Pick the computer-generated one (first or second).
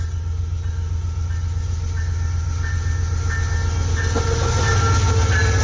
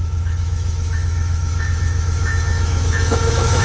second